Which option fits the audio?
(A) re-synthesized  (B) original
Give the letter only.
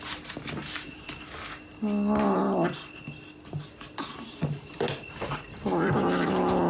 B